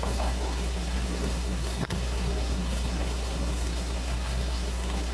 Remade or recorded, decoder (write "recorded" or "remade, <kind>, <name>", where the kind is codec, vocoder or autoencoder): remade, codec, SNAC